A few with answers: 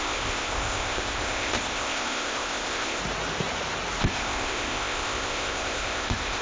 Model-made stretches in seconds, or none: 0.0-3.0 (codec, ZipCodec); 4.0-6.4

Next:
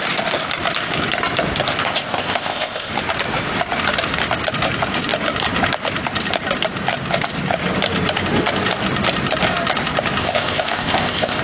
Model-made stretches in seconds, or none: 1.8-2.9 (codec, ZipCodec); 10.2-11.4

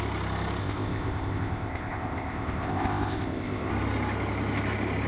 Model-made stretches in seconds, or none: 0.6-3.7 (codec, ZipCodec)